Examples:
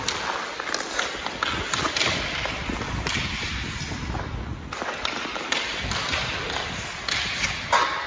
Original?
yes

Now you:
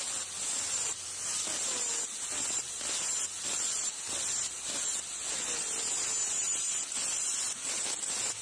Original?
yes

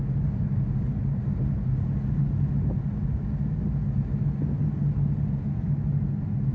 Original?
yes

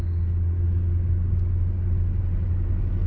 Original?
yes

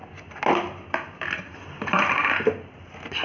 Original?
yes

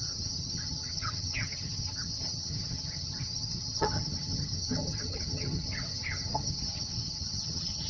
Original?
no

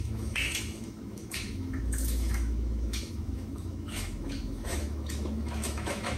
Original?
no